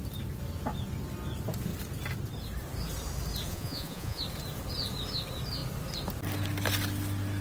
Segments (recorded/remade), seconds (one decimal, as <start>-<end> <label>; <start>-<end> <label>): 0.0-3.5 recorded; 3.5-4.2 remade; 4.2-7.4 recorded